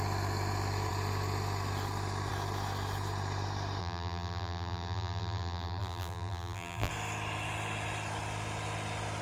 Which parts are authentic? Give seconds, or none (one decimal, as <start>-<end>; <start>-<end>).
0.0-3.8; 6.9-9.2